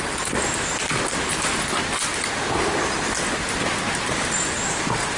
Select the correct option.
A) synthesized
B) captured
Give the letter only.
B